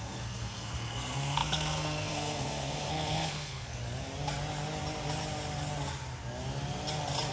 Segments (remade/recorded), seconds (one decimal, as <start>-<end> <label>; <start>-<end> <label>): 0.0-3.8 remade; 3.8-7.3 recorded